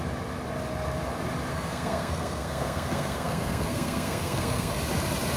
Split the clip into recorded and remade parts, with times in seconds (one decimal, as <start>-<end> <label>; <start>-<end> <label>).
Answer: 0.0-1.5 recorded; 1.5-4.7 remade; 4.7-5.4 recorded